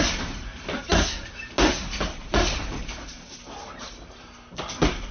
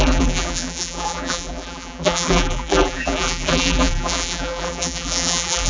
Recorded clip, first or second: first